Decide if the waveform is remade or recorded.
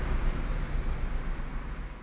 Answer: recorded